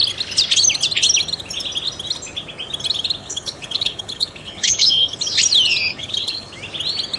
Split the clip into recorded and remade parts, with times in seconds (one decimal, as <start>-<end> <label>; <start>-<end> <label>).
0.0-3.2 recorded; 3.2-5.2 remade; 5.2-5.9 recorded; 5.9-6.5 remade; 6.5-7.2 recorded